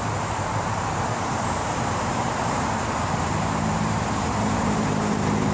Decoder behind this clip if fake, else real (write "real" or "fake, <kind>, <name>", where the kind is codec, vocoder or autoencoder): fake, vocoder, BigVGAN v2